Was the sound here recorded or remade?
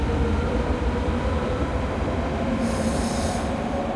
recorded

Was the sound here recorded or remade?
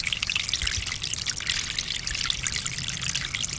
recorded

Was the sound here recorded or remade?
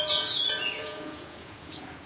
remade